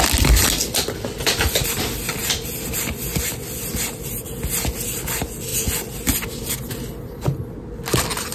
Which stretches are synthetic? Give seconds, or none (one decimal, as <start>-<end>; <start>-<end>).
none